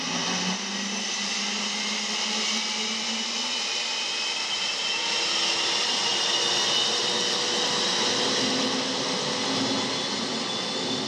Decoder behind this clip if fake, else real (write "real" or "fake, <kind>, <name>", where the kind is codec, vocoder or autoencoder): real